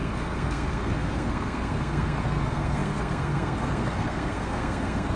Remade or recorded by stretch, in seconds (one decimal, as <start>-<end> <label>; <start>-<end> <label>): 0.0-5.2 remade